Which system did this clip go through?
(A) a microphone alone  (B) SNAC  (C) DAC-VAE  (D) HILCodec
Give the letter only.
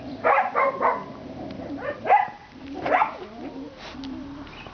A